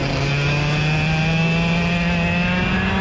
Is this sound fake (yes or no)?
no